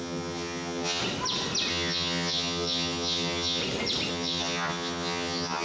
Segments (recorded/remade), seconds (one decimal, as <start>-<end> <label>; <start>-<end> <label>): 0.0-1.0 remade; 1.0-1.7 recorded; 1.7-3.6 remade; 3.6-4.1 recorded; 4.1-5.6 remade